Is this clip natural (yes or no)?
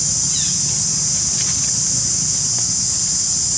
yes